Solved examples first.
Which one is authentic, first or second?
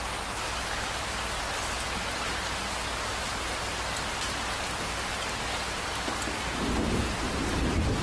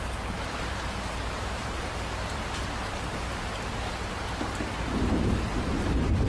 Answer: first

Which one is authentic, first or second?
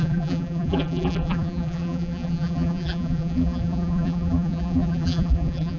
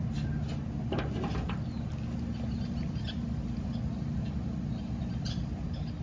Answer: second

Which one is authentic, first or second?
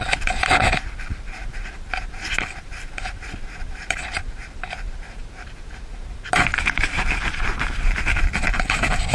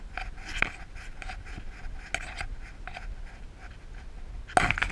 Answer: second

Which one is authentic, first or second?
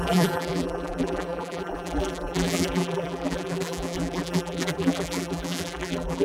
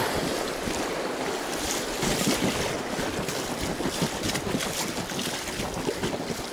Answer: second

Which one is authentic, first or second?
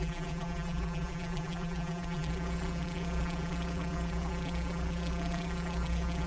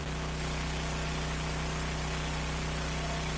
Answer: second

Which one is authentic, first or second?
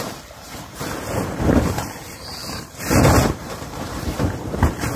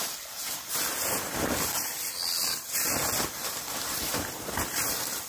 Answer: second